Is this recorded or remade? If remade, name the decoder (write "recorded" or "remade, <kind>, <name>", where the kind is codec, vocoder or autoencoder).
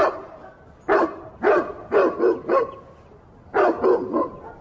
recorded